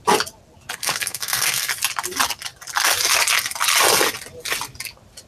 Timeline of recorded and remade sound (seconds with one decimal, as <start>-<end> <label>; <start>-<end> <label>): 0.0-0.8 recorded; 0.8-1.7 remade; 1.7-5.3 recorded